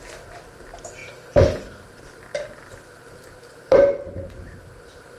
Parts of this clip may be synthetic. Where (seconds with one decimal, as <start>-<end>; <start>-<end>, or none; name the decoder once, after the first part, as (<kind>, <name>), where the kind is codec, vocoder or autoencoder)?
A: 0.0-2.3 (vocoder, BigVGAN v2)